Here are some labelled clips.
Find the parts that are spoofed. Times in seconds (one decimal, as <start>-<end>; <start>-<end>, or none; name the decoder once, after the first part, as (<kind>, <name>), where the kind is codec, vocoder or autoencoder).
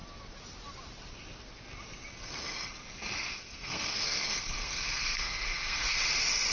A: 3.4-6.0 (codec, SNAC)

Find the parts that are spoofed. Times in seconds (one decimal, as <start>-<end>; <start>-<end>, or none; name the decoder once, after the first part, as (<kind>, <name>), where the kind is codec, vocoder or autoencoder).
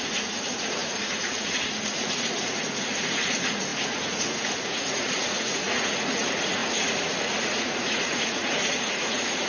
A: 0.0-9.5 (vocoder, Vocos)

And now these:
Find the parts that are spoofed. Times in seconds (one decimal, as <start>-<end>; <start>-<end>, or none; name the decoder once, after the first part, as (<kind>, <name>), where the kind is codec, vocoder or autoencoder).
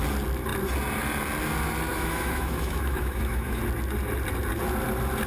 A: 1.9-3.6 (autoencoder, DAC-VAE)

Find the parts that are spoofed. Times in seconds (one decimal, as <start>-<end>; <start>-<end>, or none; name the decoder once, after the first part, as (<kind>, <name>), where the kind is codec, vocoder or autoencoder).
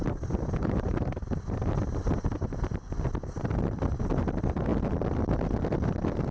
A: 0.0-1.8 (vocoder, BigVGAN v2)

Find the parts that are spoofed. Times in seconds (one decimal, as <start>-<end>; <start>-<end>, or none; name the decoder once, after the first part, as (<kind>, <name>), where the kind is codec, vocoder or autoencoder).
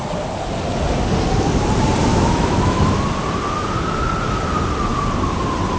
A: 2.1-3.0 (autoencoder, DAC-VAE)